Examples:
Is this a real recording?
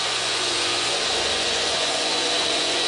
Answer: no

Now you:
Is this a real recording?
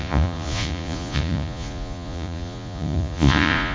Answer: no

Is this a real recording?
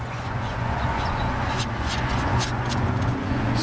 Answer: no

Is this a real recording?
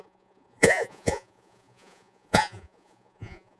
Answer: no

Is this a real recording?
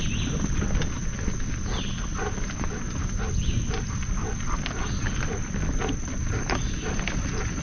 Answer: yes